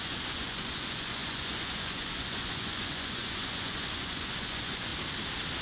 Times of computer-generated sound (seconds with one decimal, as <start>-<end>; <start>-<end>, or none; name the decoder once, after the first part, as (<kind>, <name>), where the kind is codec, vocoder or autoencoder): 0.0-4.9 (vocoder, Vocos)